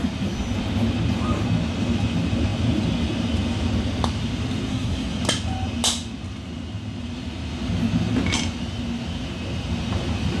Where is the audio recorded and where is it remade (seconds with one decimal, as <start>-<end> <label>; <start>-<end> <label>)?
0.0-4.7 recorded; 4.7-5.2 remade; 5.2-10.4 recorded